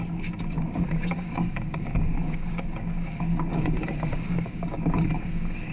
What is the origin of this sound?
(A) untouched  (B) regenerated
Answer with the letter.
B